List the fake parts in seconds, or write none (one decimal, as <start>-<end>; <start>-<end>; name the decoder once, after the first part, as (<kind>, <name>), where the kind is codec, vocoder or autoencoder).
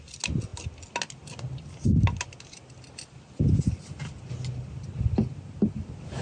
none